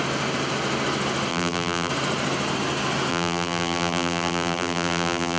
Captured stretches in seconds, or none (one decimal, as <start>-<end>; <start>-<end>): 0.0-1.3; 1.9-3.1